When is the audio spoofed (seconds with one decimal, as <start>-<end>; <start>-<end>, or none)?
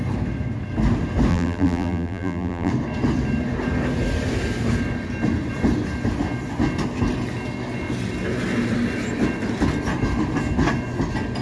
1.3-2.7